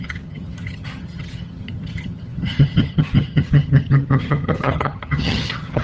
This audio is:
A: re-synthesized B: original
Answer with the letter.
A